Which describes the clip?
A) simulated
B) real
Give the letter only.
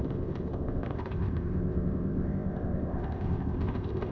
A